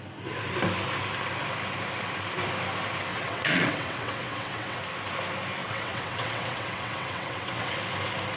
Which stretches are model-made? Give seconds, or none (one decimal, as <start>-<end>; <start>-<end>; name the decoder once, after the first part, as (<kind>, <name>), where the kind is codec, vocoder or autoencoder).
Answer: 3.1-4.8 (vocoder, WaveNeXt); 5.6-7.7